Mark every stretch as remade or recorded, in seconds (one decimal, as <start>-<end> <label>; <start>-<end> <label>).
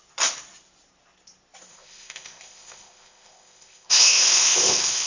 0.0-1.7 recorded; 1.7-5.1 remade